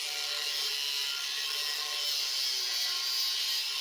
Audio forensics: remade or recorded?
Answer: recorded